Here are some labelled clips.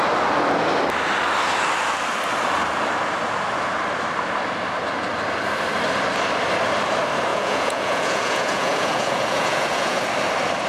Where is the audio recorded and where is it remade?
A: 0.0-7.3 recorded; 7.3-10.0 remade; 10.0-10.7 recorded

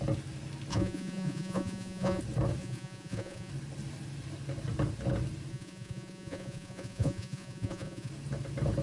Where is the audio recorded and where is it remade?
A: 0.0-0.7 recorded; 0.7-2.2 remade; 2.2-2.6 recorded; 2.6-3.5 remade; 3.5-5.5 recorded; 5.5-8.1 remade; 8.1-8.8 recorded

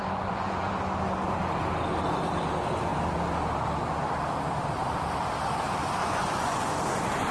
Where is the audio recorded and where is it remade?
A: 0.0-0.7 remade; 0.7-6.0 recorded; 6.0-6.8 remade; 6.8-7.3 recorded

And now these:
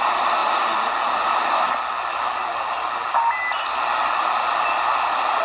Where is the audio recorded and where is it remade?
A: 0.0-5.4 recorded

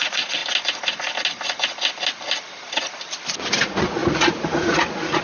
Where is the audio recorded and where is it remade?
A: 0.0-0.4 remade; 0.4-3.5 recorded; 3.5-5.2 remade

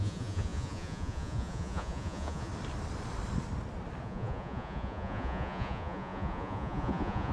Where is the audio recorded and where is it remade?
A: 0.0-2.5 remade; 2.5-4.0 recorded; 4.0-7.3 remade

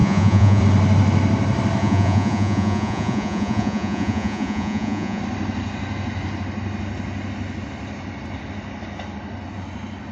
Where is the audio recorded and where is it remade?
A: 0.0-0.6 remade; 0.6-1.8 recorded; 1.8-5.2 remade; 5.2-10.1 recorded